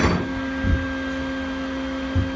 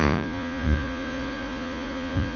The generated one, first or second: second